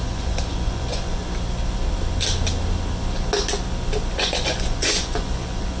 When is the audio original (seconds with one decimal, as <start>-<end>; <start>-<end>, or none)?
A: 1.2-4.2